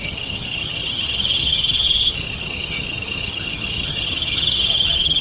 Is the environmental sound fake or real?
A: fake